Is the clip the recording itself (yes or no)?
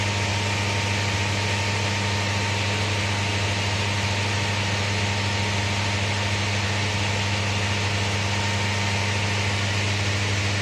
yes